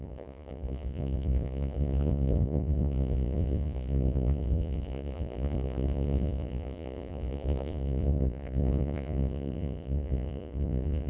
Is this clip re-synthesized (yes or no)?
yes